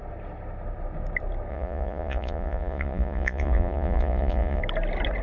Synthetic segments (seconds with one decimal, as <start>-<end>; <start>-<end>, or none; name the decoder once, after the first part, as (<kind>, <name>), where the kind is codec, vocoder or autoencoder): 1.5-4.6 (vocoder, Vocos)